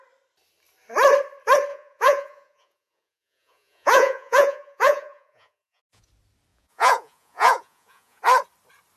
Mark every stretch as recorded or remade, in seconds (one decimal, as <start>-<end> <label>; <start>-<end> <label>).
0.0-1.7 recorded; 1.7-6.1 remade; 6.1-6.5 recorded; 6.5-8.2 remade; 8.2-9.0 recorded